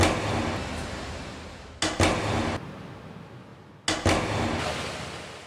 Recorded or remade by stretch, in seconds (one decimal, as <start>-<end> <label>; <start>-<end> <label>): 0.0-5.5 recorded